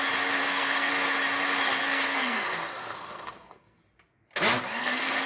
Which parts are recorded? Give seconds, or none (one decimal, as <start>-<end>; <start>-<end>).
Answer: 0.0-0.4; 0.9-1.8; 3.8-4.8